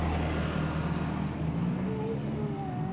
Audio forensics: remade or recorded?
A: recorded